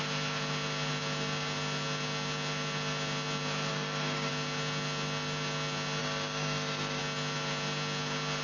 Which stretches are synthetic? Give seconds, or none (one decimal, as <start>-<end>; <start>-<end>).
3.7-4.3; 6.0-7.0